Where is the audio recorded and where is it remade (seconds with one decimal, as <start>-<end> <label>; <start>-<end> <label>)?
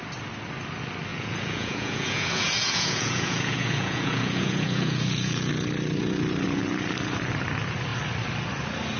0.0-1.1 recorded; 1.1-5.5 remade; 5.5-9.0 recorded